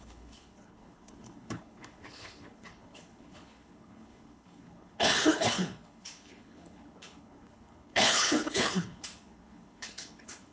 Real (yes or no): no